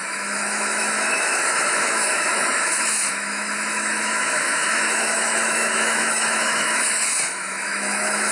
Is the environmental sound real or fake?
fake